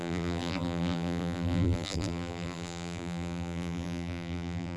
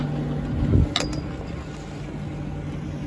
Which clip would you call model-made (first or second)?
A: first